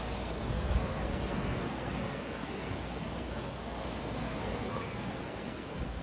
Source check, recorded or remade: remade